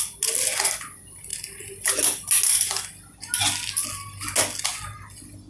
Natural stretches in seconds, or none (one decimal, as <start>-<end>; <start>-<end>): 0.0-5.5